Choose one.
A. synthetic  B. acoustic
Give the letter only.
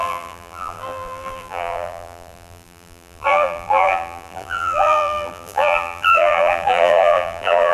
A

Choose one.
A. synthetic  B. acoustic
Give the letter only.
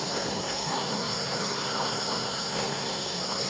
A